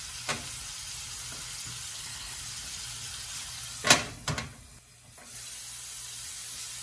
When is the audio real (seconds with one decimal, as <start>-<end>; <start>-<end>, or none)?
0.0-1.9; 2.4-6.8